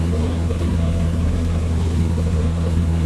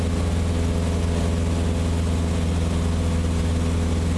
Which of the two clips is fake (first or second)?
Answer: first